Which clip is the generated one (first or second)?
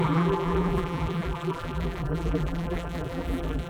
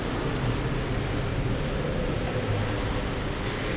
first